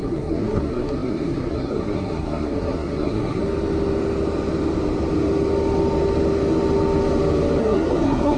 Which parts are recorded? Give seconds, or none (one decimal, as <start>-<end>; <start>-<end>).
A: 3.4-7.6